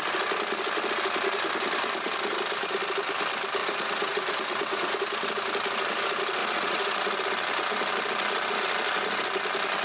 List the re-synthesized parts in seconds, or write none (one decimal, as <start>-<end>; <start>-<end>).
3.6-4.9; 6.4-7.1